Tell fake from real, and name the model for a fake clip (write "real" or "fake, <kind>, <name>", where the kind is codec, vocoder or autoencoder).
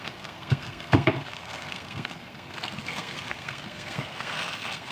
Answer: fake, codec, SNAC